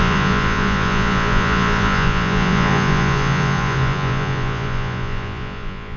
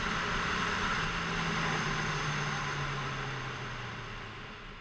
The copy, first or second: first